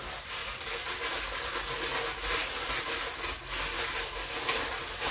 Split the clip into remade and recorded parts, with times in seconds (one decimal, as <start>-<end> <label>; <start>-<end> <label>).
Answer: 0.0-5.1 recorded